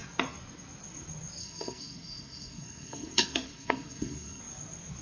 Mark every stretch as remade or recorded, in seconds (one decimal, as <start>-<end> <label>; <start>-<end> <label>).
0.0-1.4 recorded; 1.4-4.4 remade; 4.4-5.0 recorded